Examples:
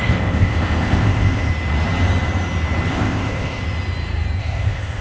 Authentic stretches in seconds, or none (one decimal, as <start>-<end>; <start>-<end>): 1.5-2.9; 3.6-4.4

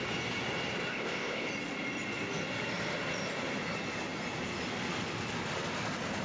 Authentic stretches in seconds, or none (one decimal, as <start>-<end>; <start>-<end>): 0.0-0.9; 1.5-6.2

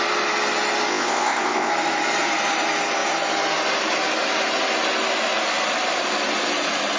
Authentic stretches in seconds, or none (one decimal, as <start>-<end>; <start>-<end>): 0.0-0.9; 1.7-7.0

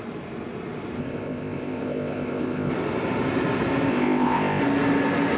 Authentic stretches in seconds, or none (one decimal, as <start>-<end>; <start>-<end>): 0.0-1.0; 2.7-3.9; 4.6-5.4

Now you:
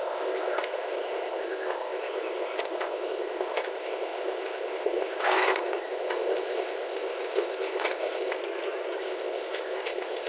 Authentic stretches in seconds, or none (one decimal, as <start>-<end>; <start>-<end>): 8.4-9.0

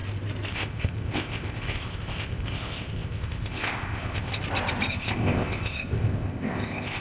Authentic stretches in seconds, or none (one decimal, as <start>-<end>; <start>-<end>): 0.0-0.5; 4.3-4.9

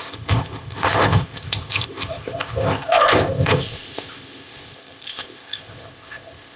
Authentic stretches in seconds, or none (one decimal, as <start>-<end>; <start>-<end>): none